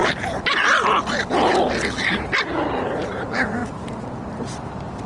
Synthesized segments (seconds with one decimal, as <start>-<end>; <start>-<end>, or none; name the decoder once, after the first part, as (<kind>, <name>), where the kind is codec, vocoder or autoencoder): none